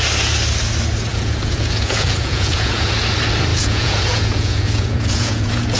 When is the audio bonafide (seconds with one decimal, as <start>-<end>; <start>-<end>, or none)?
0.0-1.1; 2.9-3.5